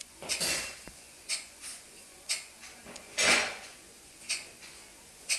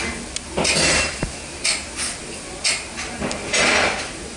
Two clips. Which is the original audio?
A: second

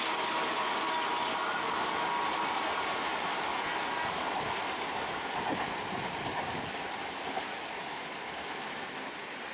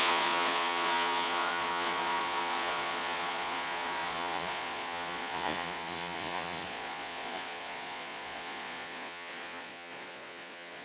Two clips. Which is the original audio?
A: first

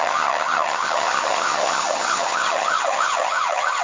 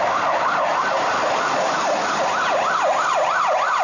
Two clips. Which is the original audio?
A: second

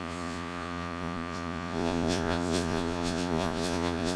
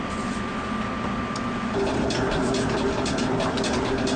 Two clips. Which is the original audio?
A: second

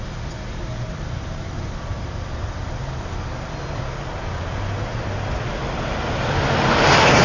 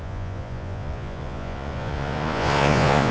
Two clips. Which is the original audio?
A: first